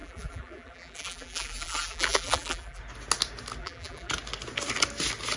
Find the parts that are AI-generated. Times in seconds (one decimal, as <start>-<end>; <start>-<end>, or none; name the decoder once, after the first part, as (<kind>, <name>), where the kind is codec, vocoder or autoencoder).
0.0-2.8 (vocoder, BigVGAN v2); 3.6-4.1